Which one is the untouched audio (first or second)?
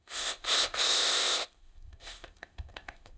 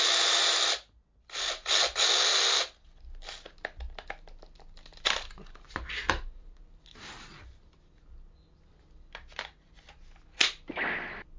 second